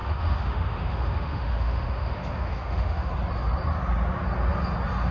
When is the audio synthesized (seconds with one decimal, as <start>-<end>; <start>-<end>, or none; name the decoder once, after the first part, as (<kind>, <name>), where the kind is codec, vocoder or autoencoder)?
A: 0.0-3.1 (autoencoder, DAC-VAE)